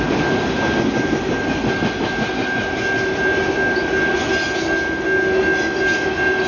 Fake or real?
real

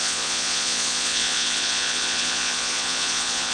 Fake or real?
fake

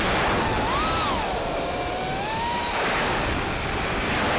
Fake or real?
real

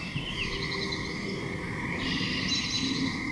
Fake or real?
real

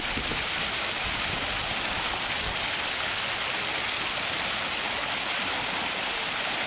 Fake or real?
real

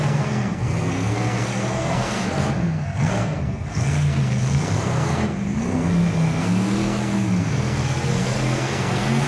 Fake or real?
fake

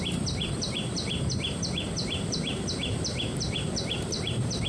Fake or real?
fake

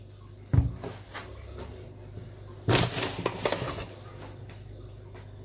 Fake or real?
real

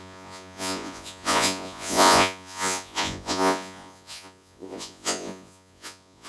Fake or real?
fake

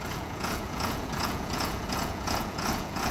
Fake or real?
fake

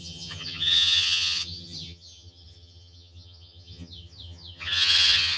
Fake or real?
fake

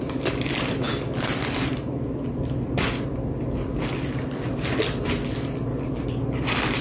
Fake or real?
real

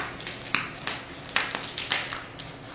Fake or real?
real